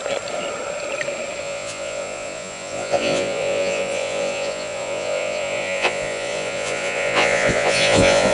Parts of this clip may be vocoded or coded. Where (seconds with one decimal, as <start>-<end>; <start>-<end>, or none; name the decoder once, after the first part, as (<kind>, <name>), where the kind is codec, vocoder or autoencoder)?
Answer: 1.4-8.3 (vocoder, Vocos)